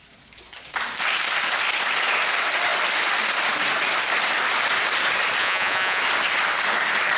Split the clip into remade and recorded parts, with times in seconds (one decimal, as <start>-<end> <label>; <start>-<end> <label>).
0.0-5.4 recorded; 5.4-6.0 remade; 6.0-7.2 recorded